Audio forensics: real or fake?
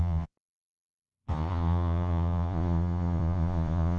fake